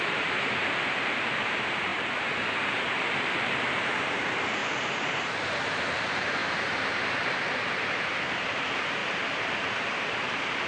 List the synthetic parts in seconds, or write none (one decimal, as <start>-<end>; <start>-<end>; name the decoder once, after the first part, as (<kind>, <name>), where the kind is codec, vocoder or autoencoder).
0.0-4.6 (vocoder, BigVGAN v2); 5.6-9.0; 9.7-10.7